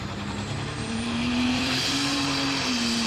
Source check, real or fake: fake